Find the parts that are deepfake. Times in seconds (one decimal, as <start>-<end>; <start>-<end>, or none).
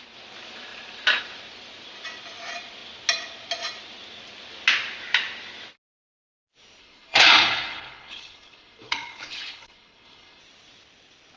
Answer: 6.8-10.4